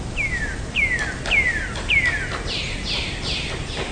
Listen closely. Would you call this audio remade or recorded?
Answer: recorded